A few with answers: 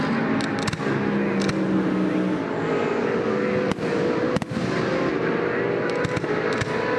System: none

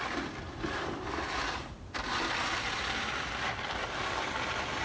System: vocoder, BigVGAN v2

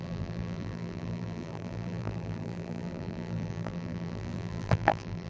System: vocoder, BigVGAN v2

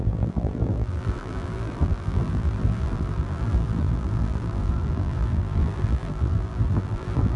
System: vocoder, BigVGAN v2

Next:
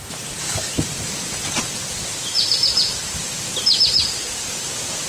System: vocoder, BigVGAN v2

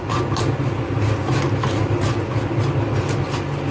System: none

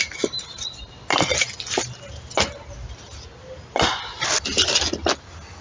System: none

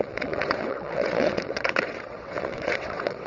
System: vocoder, WaveNeXt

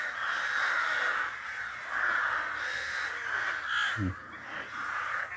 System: none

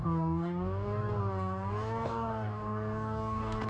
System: codec, DAC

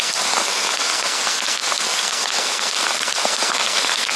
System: codec, SNAC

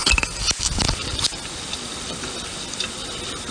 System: none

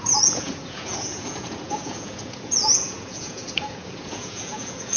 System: vocoder, Vocos